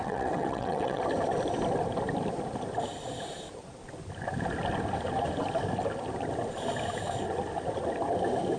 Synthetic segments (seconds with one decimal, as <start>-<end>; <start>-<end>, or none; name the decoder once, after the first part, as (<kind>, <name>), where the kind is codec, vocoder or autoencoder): 0.0-1.0 (vocoder, WaveNeXt)